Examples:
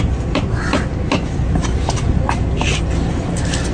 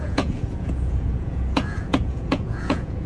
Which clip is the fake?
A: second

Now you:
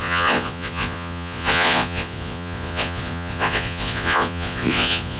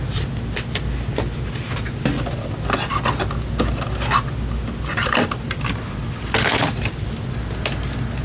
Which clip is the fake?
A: first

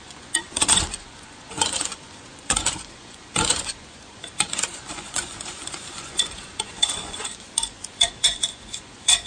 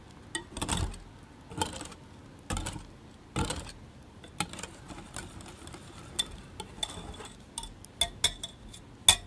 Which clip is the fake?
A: first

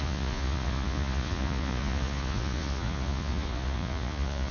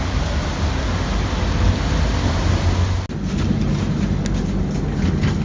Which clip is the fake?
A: first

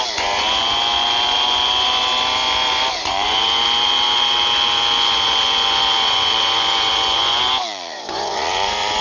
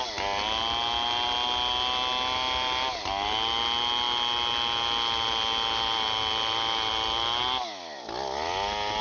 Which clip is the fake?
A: first